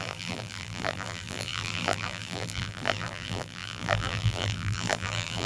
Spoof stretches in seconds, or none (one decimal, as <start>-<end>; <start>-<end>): 0.0-5.5